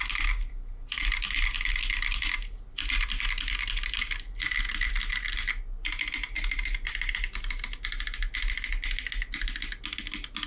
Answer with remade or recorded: recorded